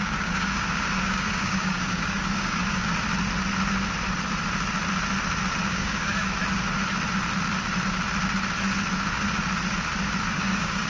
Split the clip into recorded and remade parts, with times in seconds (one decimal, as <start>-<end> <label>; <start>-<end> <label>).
0.0-2.9 remade; 2.9-5.6 recorded; 5.6-6.4 remade; 6.4-10.3 recorded; 10.3-10.9 remade